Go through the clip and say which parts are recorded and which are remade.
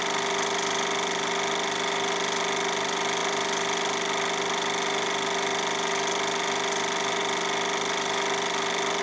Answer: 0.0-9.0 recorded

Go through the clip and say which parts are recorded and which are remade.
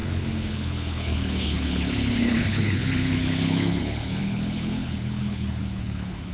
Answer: 0.0-6.3 remade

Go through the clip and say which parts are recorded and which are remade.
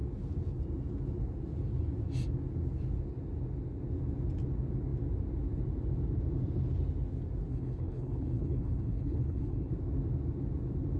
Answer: 0.0-7.5 recorded; 7.5-9.7 remade; 9.7-11.0 recorded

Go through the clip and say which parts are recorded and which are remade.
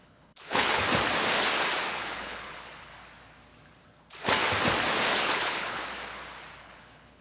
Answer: 0.0-0.8 remade; 0.8-1.9 recorded; 1.9-2.9 remade; 2.9-5.2 recorded; 5.2-5.8 remade; 5.8-6.6 recorded; 6.6-7.2 remade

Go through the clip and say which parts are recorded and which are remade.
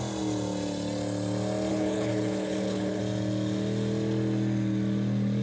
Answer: 0.0-1.7 recorded; 1.7-3.0 remade; 3.0-5.4 recorded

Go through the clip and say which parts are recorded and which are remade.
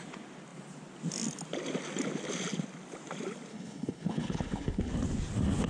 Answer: 0.0-3.5 recorded; 3.5-4.9 remade; 4.9-5.7 recorded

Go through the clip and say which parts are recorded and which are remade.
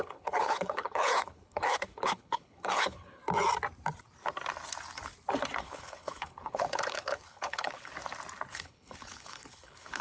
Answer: 0.0-3.2 remade; 3.2-5.6 recorded; 5.6-7.9 remade; 7.9-8.5 recorded; 8.5-10.0 remade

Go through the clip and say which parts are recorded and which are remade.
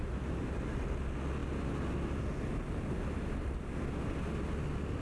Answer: 0.0-5.0 recorded